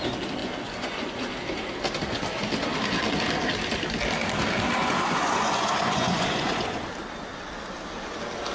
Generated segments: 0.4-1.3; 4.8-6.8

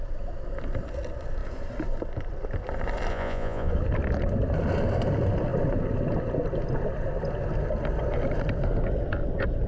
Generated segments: 3.1-3.7